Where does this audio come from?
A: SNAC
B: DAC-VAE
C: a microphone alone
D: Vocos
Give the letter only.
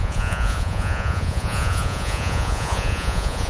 D